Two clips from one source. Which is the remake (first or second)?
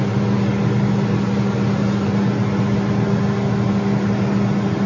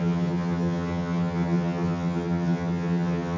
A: second